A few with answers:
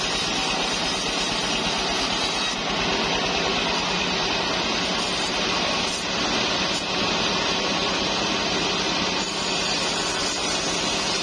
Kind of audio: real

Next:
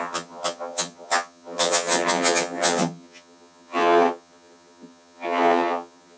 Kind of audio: fake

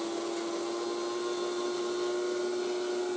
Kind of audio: real